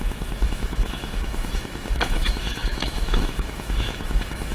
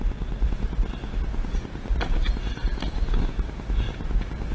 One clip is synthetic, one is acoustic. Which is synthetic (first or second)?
first